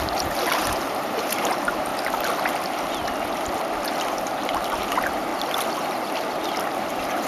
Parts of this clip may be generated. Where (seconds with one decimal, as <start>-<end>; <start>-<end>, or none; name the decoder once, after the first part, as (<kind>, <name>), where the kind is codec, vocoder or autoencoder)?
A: 0.0-1.9 (vocoder, BigVGAN v2); 4.1-5.3; 6.7-7.3